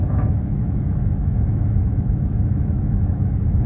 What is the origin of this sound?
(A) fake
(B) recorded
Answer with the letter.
A